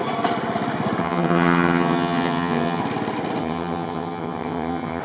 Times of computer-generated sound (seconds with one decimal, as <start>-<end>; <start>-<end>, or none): 1.0-2.8; 3.4-5.0